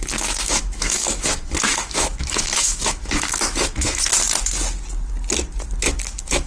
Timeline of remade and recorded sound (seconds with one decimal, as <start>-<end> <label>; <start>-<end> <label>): 0.0-4.1 remade; 4.1-5.8 recorded; 5.8-6.5 remade